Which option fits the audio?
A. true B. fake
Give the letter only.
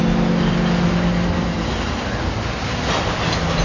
A